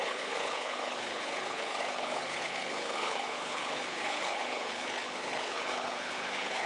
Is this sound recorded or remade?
remade